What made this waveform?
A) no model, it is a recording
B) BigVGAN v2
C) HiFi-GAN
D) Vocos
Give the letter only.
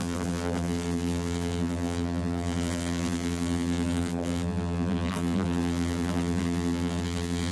B